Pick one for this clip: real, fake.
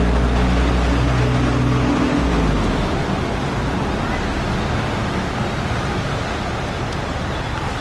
real